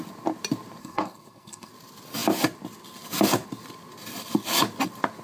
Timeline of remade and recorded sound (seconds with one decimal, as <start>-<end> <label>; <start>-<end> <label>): 0.0-0.8 recorded; 0.8-1.7 remade; 1.7-5.2 recorded